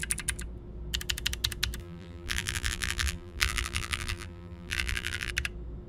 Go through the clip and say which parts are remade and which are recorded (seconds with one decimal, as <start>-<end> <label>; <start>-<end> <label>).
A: 0.0-1.8 recorded; 1.8-5.3 remade; 5.3-5.9 recorded